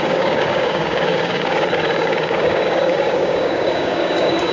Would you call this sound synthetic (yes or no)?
yes